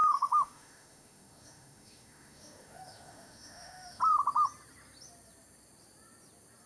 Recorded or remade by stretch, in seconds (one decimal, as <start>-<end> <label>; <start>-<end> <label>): 0.0-4.0 remade; 4.0-6.7 recorded